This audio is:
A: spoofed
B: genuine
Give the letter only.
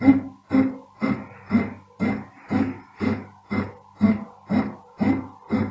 B